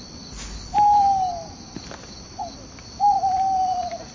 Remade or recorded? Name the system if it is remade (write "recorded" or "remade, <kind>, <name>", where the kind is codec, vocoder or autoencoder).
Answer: recorded